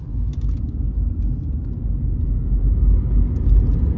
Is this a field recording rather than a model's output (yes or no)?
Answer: yes